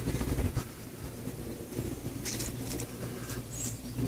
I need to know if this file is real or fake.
fake